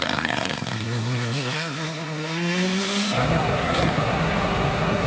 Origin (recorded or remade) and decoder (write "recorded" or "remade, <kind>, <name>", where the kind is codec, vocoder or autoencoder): remade, codec, SNAC